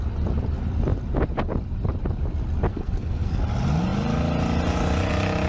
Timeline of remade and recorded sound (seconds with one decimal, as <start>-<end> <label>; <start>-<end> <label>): 0.0-2.7 recorded; 2.7-3.4 remade; 3.4-5.5 recorded